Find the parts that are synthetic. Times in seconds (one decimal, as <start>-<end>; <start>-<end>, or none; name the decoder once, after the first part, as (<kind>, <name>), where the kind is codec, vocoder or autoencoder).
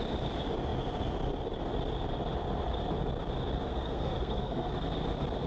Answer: 3.7-4.7 (codec, SNAC)